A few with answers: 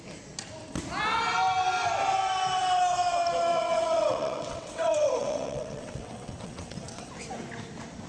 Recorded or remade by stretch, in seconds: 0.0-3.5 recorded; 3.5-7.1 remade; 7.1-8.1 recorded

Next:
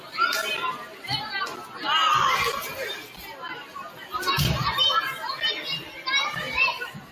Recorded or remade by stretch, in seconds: 0.0-1.5 remade; 1.5-5.8 recorded; 5.8-7.1 remade

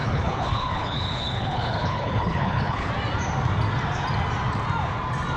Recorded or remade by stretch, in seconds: 0.0-2.9 remade; 2.9-5.4 recorded

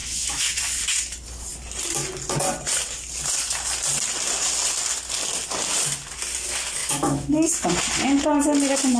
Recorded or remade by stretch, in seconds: 0.0-0.6 remade; 0.6-6.8 recorded; 6.8-7.5 remade; 7.5-9.0 recorded

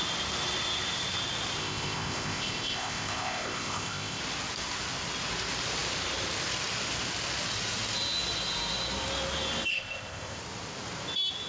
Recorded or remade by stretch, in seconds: 0.0-1.6 recorded; 1.6-4.2 remade; 4.2-9.7 recorded; 9.7-10.4 remade; 10.4-11.5 recorded

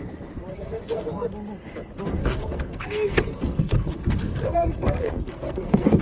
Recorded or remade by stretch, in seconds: 0.0-0.5 recorded; 0.5-1.3 remade; 1.3-2.2 recorded; 2.2-6.0 remade

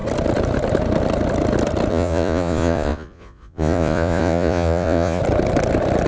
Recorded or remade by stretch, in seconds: 0.0-1.9 recorded; 1.9-5.2 remade; 5.2-6.1 recorded